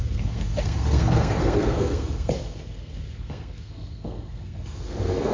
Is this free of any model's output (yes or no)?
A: no